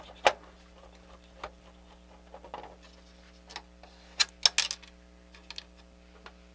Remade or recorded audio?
recorded